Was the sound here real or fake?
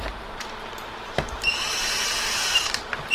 fake